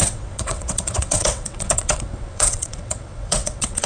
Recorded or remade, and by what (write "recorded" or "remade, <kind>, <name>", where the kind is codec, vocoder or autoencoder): remade, vocoder, WaveNeXt